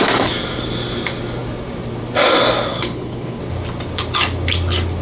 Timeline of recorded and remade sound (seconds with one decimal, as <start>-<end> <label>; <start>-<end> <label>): 0.0-2.7 recorded; 2.7-3.4 remade; 3.4-5.0 recorded